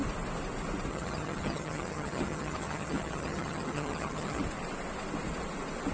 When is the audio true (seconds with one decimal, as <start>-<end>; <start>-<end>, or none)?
0.0-0.9; 4.4-5.9